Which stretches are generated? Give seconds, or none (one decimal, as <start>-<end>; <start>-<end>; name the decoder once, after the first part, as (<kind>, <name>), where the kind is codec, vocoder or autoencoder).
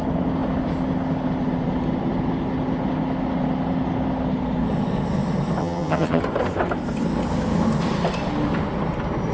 5.6-6.2 (vocoder, HiFi-GAN)